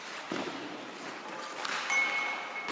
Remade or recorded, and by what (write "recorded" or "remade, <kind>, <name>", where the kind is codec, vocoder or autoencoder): recorded